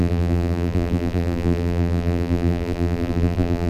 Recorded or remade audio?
remade